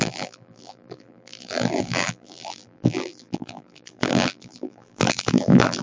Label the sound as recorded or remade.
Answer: remade